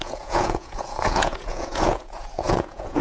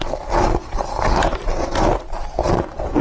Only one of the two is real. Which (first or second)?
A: second